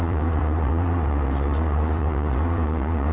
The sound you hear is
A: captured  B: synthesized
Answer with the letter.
B